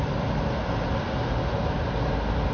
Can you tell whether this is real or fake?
real